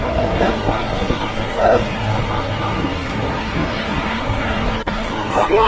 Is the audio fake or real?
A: fake